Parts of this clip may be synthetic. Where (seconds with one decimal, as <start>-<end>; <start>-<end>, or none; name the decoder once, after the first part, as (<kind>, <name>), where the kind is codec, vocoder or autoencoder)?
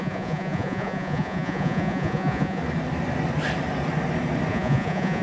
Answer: 0.0-2.6 (vocoder, Vocos); 4.5-5.2